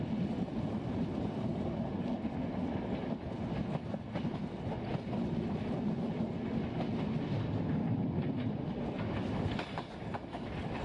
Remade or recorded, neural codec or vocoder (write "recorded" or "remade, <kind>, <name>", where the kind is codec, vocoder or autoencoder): recorded